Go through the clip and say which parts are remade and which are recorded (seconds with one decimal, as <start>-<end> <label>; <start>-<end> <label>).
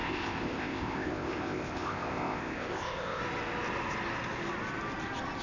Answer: 0.0-3.2 remade; 3.2-5.4 recorded